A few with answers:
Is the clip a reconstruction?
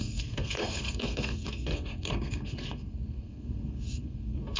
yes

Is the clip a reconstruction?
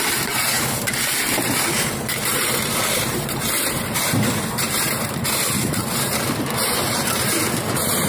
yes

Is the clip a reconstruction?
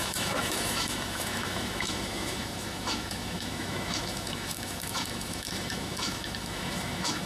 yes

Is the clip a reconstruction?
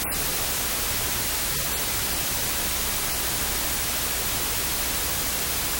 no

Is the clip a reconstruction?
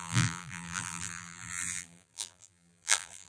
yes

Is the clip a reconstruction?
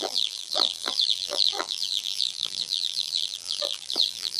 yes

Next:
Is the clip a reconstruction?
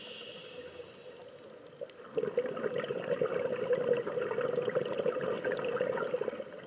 no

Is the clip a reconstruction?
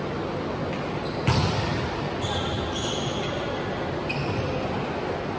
no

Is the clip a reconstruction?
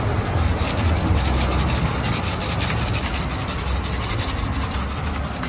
no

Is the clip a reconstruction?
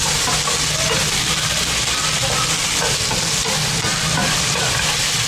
no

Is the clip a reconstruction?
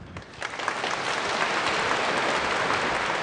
no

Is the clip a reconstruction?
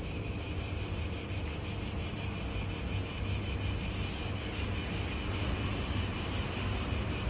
no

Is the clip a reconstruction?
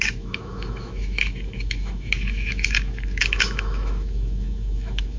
yes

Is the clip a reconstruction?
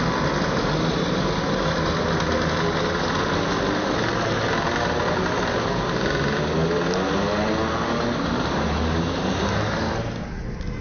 no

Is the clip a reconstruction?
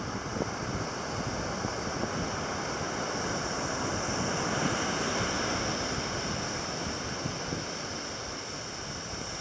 no